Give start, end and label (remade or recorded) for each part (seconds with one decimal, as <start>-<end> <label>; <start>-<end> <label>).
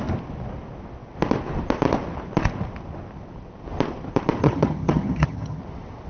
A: 0.0-4.4 recorded; 4.4-5.6 remade; 5.6-6.1 recorded